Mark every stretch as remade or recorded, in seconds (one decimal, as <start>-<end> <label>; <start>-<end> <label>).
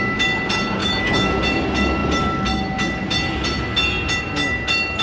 0.0-0.8 recorded; 0.8-1.3 remade; 1.3-5.0 recorded